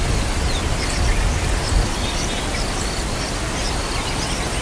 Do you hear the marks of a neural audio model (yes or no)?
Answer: no